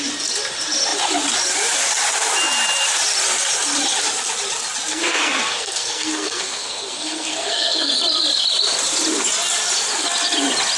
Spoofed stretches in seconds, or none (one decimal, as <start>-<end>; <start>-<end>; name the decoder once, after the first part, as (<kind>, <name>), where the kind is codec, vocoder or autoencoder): 4.9-7.9 (codec, SNAC)